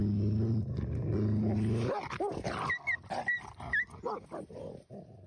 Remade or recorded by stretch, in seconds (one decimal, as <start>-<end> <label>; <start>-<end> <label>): 0.0-5.3 recorded